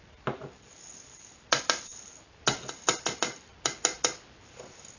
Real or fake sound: real